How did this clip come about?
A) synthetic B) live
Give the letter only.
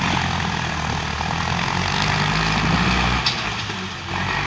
B